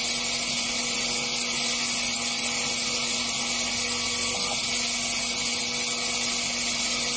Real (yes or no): yes